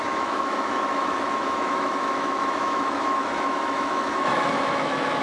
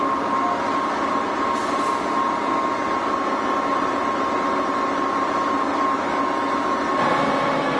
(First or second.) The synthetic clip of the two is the first